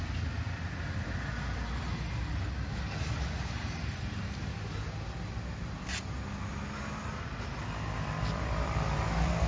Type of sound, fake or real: real